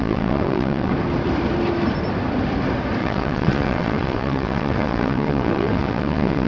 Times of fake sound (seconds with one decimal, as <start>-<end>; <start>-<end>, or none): 0.0-0.9; 3.0-6.5